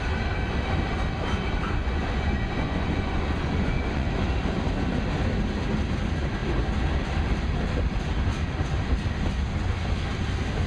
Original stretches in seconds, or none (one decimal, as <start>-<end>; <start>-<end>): 0.0-1.8; 4.2-10.7